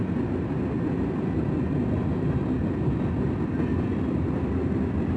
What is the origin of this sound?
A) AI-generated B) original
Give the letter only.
B